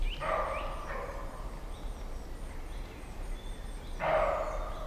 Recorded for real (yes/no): yes